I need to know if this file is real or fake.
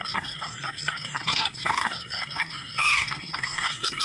fake